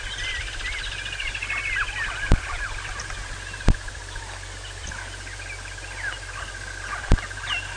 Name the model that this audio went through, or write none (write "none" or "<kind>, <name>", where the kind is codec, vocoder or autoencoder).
none